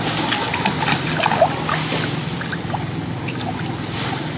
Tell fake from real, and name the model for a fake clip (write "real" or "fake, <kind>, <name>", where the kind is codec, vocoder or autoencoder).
real